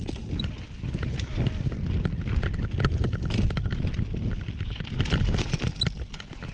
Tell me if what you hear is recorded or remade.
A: recorded